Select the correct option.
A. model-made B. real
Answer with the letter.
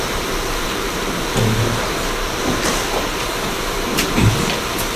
A